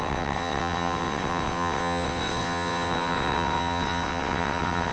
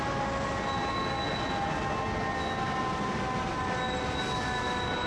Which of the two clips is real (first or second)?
second